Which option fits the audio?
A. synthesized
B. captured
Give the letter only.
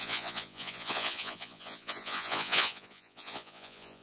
A